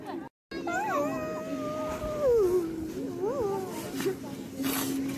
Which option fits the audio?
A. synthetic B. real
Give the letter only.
B